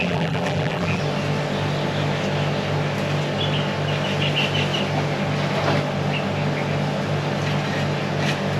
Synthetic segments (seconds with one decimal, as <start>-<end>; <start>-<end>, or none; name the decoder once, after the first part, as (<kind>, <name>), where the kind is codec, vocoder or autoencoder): 0.0-1.0 (vocoder, BigVGAN v2)

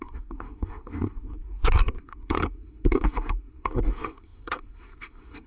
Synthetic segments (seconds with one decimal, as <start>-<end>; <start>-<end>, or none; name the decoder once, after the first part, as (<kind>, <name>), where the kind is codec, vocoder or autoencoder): 0.0-5.5 (codec, SNAC)

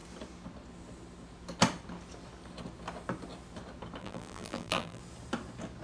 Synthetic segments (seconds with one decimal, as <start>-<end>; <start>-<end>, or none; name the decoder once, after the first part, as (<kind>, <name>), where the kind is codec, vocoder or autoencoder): 4.0-5.0 (vocoder, BigVGAN v2)

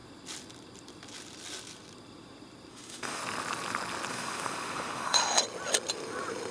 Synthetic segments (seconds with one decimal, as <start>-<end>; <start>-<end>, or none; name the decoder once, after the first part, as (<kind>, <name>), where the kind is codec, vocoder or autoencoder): 2.7-3.2 (autoencoder, DAC-VAE); 4.1-5.2

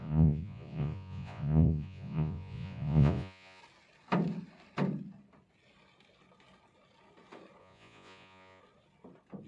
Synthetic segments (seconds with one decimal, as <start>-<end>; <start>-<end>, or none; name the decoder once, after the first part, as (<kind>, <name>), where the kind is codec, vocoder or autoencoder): 0.0-3.6 (vocoder, Vocos); 7.6-8.6

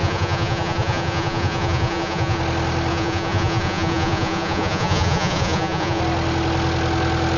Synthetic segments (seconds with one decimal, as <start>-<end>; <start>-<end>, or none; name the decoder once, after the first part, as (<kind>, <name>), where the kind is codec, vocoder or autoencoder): 0.0-2.4 (vocoder, Vocos); 2.9-6.0